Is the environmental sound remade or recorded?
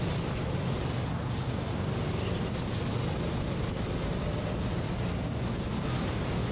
recorded